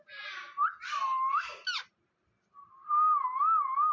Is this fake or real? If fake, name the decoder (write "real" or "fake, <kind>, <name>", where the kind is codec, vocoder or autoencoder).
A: real